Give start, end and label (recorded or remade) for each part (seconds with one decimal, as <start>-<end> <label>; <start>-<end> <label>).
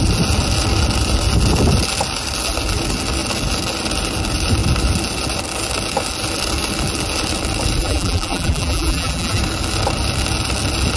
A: 0.0-7.8 recorded; 7.8-9.4 remade; 9.4-11.0 recorded